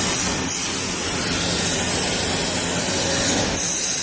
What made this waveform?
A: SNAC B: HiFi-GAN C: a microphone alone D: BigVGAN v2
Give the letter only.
C